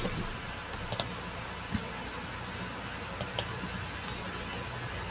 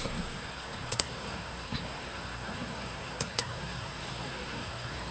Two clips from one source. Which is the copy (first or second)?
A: second